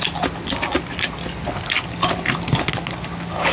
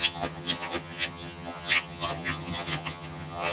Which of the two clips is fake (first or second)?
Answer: second